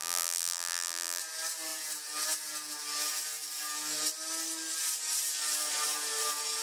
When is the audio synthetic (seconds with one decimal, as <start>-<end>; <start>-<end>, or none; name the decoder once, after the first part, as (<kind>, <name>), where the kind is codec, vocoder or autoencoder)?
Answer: 0.0-1.2 (vocoder, BigVGAN v2)